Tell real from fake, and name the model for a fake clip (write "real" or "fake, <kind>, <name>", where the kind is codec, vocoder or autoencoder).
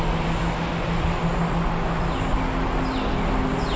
real